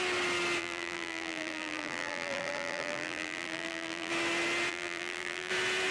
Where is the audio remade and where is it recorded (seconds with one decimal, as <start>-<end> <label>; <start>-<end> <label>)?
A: 0.0-0.6 recorded; 0.6-4.1 remade; 4.1-4.7 recorded; 4.7-5.5 remade; 5.5-5.9 recorded

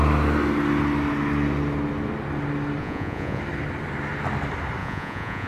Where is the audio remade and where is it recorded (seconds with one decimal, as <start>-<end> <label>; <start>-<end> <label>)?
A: 0.0-2.8 recorded; 2.8-3.4 remade; 3.4-4.8 recorded; 4.8-5.5 remade

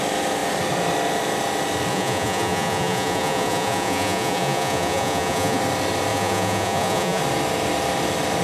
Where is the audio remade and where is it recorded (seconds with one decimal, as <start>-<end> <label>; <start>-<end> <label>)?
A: 0.0-1.9 recorded; 1.9-5.6 remade; 5.6-6.1 recorded; 6.1-7.2 remade; 7.2-8.4 recorded